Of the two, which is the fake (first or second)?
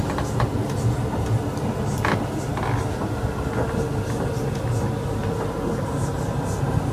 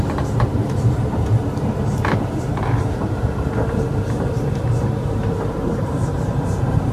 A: second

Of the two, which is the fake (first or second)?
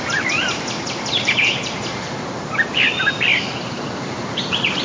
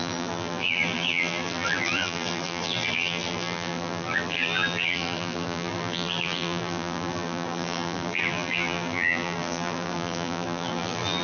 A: second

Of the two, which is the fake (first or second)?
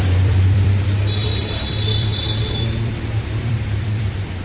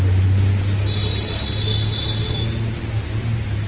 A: first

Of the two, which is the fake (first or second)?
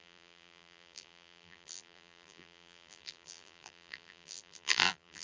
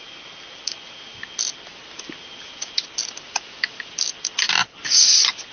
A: first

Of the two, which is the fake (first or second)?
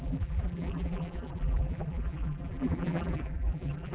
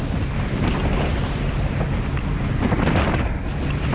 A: first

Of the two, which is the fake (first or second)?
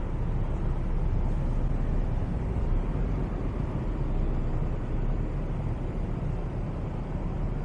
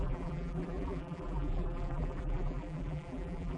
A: second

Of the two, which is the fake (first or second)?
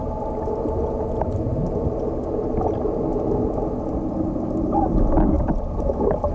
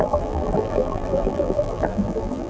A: second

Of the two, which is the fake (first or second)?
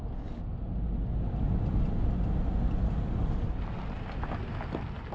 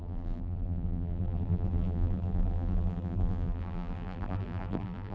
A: second